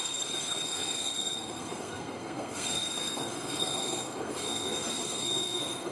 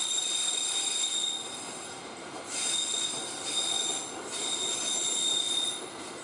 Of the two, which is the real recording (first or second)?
second